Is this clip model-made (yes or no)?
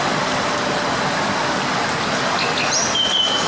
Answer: no